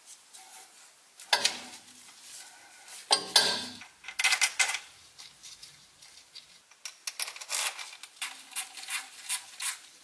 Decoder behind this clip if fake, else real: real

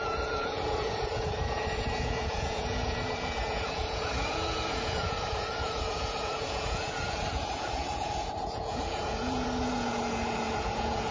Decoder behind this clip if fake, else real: fake, vocoder, Vocos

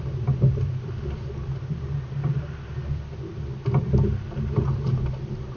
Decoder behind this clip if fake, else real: real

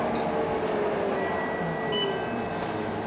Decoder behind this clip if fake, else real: real